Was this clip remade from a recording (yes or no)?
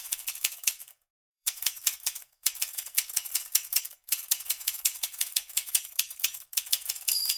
yes